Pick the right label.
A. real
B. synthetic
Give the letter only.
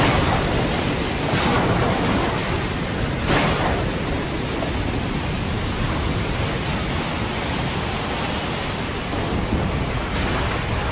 A